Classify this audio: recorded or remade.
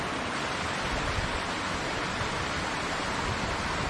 recorded